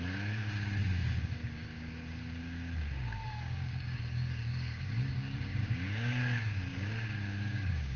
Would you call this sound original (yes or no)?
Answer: no